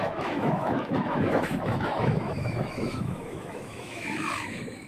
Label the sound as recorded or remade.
remade